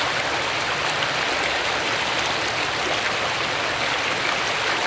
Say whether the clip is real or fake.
real